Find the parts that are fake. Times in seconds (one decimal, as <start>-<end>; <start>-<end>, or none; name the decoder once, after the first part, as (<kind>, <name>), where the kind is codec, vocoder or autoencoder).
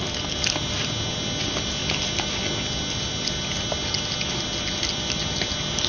none